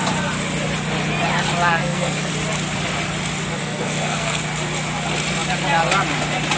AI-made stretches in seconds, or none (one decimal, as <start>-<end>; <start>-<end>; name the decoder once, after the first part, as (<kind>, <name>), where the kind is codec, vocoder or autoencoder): 1.8-2.3 (codec, SNAC); 3.6-4.4